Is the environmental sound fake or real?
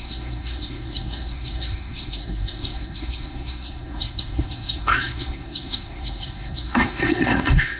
fake